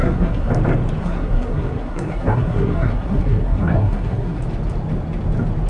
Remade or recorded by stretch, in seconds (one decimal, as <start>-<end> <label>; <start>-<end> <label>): 0.0-0.5 remade; 0.5-1.0 recorded; 1.0-4.4 remade; 4.4-5.7 recorded